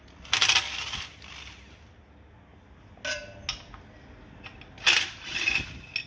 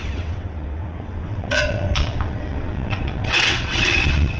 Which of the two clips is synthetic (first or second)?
second